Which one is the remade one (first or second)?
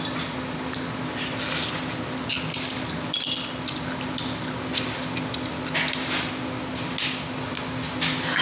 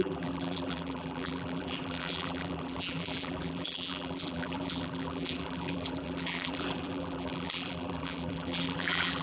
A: second